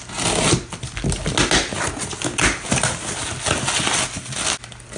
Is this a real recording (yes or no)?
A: yes